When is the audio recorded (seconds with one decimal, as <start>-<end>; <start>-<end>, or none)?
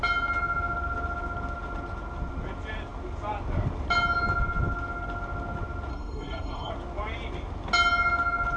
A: 0.0-5.9; 6.7-8.6